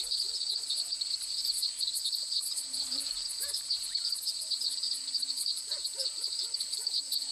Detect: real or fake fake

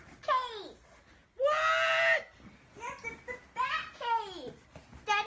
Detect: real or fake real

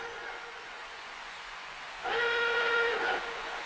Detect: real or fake fake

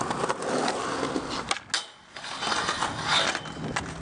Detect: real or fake real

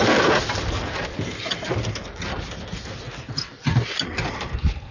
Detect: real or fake real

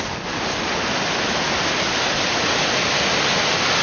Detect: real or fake real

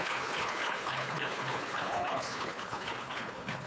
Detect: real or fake fake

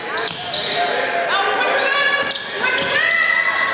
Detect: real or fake real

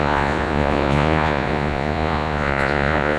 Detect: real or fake fake